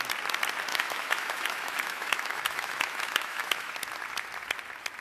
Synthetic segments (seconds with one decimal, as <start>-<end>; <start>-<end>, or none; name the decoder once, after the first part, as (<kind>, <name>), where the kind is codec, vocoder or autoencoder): 0.7-3.7 (autoencoder, DAC-VAE)